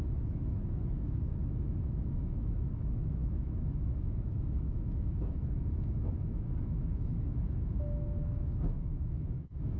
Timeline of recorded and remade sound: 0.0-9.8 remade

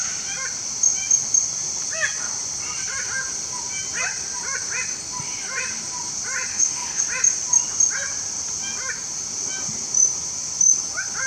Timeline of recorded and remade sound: 0.0-6.5 recorded; 6.5-7.0 remade; 7.0-11.3 recorded

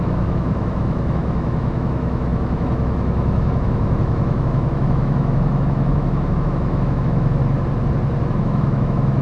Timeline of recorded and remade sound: 0.0-7.4 remade; 7.4-8.4 recorded; 8.4-9.2 remade